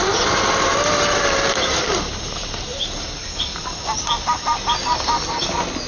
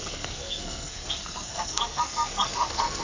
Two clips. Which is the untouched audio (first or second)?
first